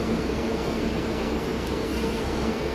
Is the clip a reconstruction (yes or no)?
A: yes